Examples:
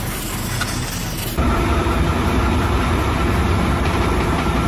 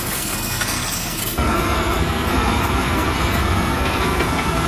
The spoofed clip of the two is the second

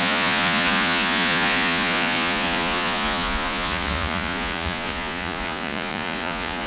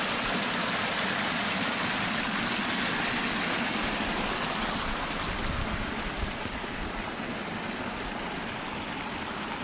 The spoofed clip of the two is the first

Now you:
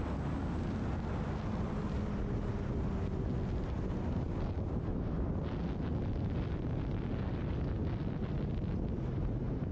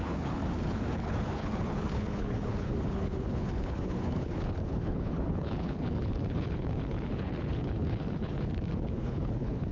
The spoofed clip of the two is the second